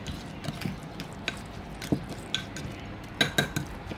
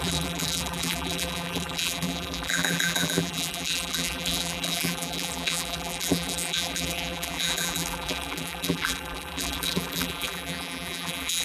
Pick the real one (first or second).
first